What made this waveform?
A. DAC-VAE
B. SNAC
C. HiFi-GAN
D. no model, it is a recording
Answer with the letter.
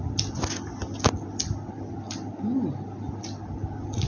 D